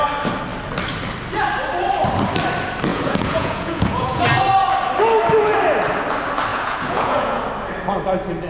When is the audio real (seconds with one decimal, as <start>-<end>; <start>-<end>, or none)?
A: 0.0-2.9; 4.2-6.5; 7.4-8.5